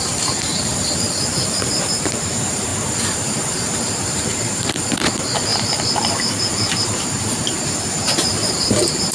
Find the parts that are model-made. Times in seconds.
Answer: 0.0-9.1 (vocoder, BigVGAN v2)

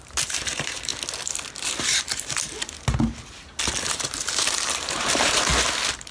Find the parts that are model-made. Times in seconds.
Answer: 0.0-0.9 (vocoder, BigVGAN v2); 3.8-5.5